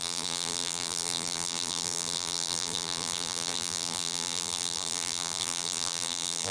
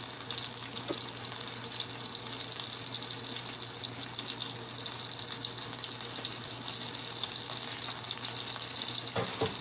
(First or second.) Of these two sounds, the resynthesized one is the first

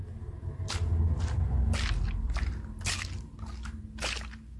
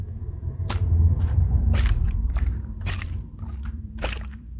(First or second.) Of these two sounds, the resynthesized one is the second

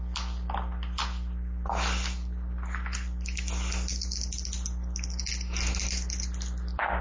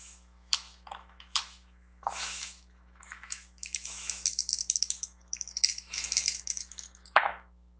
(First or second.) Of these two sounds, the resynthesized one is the second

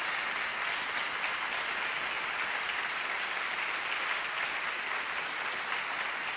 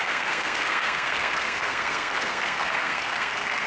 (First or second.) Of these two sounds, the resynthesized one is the second